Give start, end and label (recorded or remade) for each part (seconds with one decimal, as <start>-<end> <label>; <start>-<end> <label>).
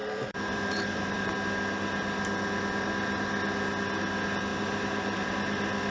0.0-1.3 remade; 1.3-4.5 recorded; 4.5-5.3 remade; 5.3-5.9 recorded